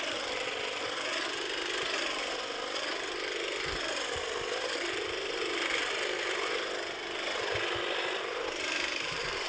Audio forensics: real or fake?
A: real